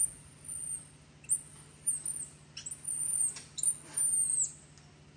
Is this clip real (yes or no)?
yes